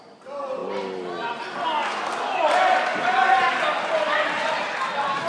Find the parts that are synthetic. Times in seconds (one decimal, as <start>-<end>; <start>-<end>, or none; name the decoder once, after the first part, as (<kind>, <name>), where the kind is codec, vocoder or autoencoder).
none